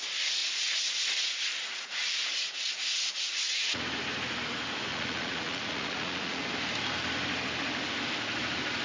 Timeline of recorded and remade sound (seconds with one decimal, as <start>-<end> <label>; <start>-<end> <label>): 0.0-0.4 recorded; 0.4-3.8 remade; 3.8-4.9 recorded; 4.9-6.4 remade; 6.4-8.8 recorded